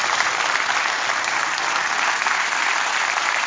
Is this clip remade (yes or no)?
no